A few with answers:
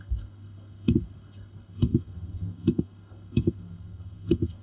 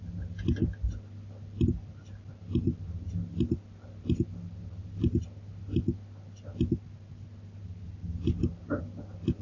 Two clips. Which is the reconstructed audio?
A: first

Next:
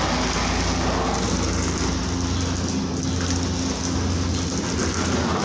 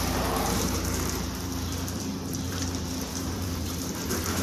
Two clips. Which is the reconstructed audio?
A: second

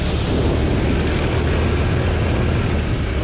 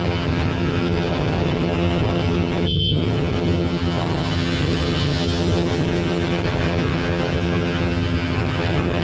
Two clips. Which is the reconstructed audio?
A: second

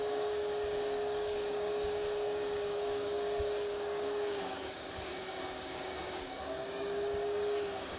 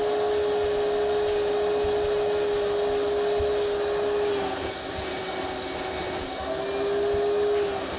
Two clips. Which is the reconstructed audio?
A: first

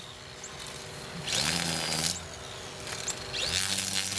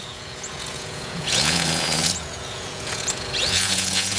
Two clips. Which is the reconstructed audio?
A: second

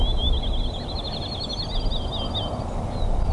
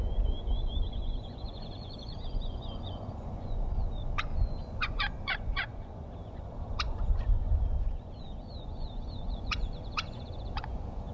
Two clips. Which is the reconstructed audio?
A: second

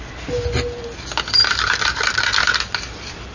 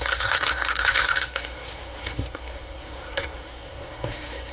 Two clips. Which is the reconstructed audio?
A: second